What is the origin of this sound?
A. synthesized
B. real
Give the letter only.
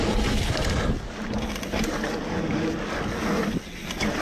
B